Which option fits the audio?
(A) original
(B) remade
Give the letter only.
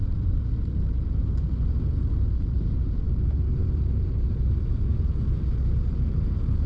B